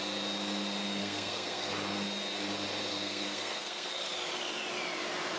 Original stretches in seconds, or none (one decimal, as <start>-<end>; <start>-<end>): 0.0-1.0; 1.7-2.9; 3.9-5.4